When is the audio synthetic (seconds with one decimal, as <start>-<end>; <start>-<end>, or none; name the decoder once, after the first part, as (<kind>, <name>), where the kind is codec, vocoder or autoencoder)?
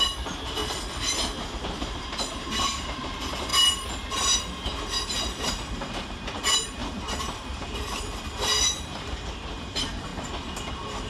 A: 0.0-0.6 (vocoder, BigVGAN v2); 1.4-3.5; 5.4-10.1; 10.7-11.1